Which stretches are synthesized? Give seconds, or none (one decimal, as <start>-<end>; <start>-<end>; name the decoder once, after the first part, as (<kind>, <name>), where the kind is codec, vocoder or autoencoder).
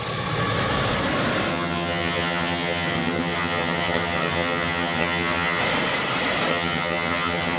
1.5-5.6 (vocoder, HiFi-GAN); 6.5-7.6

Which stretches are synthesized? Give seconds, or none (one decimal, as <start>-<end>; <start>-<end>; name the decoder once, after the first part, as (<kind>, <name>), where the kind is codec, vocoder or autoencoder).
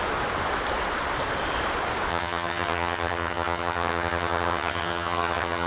2.1-5.7 (vocoder, HiFi-GAN)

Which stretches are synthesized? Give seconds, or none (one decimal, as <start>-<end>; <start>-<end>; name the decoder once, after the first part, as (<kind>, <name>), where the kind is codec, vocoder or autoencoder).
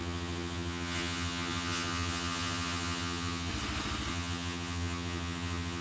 0.0-3.5 (vocoder, HiFi-GAN); 4.1-5.8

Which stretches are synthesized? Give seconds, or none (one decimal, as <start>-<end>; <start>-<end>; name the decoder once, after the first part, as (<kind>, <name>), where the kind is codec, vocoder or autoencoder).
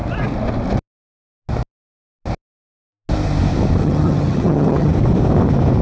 3.8-4.9 (vocoder, HiFi-GAN)